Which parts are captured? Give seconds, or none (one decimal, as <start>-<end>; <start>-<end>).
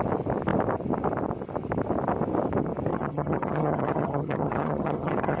0.0-2.9